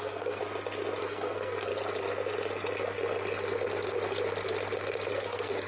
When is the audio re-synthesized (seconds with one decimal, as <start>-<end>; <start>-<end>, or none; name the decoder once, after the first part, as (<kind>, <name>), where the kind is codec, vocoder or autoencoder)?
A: 0.0-0.4 (codec, SNAC); 1.0-1.7; 5.1-5.7